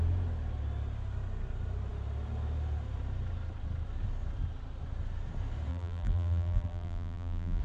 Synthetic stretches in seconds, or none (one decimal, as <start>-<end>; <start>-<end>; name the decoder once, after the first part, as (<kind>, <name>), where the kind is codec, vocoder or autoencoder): 5.7-7.6 (vocoder, BigVGAN v2)